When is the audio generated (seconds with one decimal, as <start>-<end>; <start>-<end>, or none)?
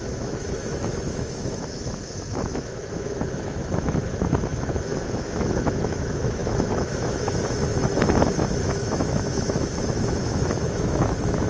0.0-11.5